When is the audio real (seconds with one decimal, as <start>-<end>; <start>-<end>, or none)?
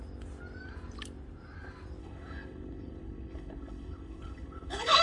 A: 0.0-2.0